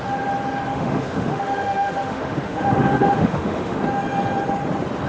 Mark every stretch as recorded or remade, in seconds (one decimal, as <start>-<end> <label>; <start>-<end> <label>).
0.0-0.7 recorded; 0.7-3.8 remade; 3.8-5.1 recorded